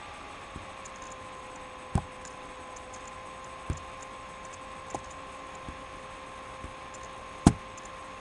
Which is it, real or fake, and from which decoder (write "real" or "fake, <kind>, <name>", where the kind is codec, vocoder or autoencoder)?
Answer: real